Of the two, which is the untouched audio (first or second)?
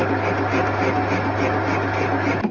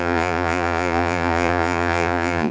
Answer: first